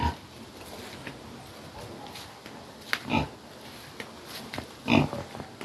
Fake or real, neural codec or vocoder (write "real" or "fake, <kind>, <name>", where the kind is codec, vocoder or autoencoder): real